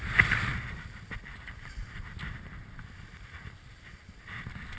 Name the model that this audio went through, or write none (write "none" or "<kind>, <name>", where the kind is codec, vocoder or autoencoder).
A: none